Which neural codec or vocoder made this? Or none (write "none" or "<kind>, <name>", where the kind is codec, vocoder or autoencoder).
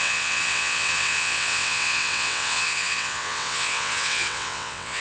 vocoder, WaveNeXt